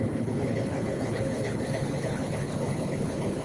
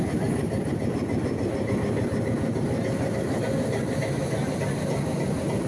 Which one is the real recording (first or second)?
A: second